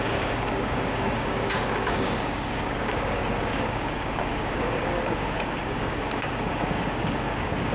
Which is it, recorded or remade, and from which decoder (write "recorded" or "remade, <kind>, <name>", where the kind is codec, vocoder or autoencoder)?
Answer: remade, codec, DAC